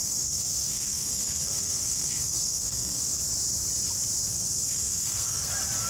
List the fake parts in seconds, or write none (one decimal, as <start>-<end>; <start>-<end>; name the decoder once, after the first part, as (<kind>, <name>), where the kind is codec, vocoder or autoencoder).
0.0-3.2 (codec, SNAC); 4.3-5.5

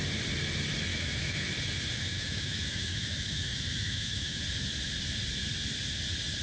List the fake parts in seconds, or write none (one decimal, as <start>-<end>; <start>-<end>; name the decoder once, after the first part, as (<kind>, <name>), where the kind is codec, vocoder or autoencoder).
0.9-1.5 (autoencoder, DAC-VAE); 2.1-4.4

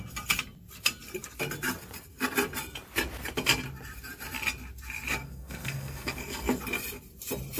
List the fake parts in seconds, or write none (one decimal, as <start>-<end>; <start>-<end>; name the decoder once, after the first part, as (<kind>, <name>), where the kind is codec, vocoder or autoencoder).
5.2-6.6 (codec, SNAC)